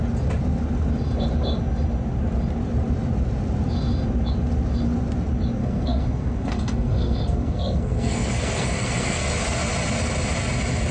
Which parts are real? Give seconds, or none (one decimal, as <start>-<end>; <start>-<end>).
0.0-5.6; 9.3-10.9